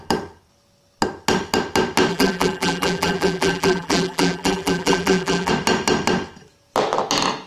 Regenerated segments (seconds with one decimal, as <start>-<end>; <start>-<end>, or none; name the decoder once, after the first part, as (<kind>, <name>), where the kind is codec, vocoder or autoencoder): 2.1-5.5 (vocoder, BigVGAN v2)